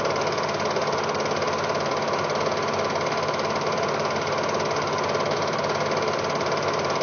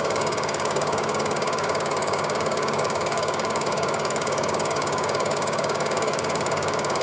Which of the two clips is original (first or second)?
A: first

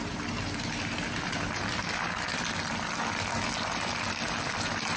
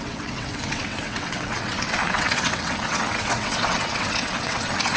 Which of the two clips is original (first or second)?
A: first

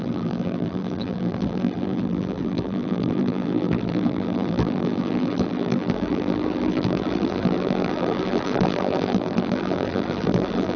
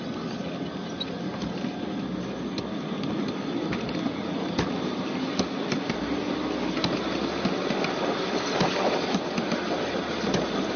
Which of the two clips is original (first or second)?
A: second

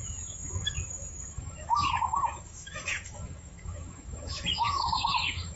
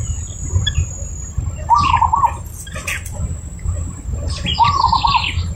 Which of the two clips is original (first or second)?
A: second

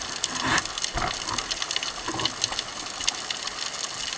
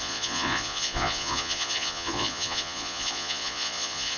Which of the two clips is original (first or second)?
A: first